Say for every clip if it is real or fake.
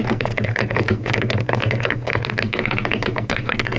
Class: fake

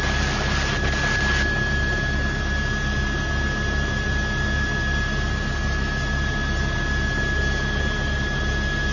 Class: real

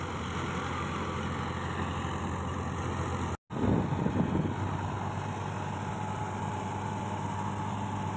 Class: real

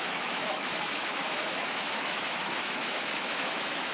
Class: fake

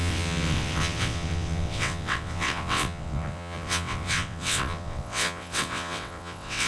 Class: fake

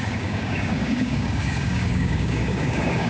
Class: fake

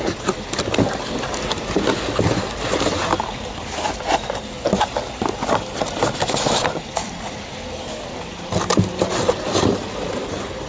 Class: real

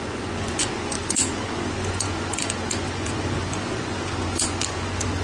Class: fake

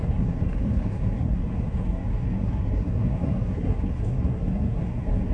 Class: fake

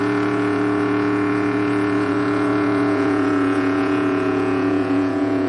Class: fake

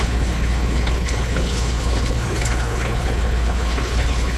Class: fake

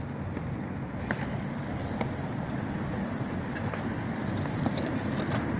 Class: real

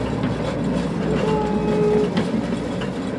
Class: real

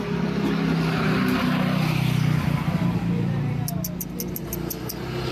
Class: real